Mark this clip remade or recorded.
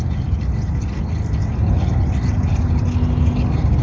recorded